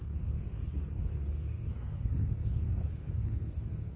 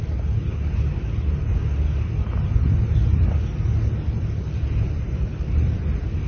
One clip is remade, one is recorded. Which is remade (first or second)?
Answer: first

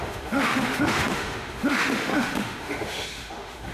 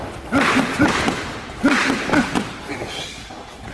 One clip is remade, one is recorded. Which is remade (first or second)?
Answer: first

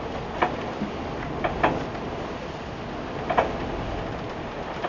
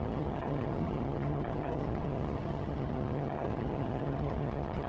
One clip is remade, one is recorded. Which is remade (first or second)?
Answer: second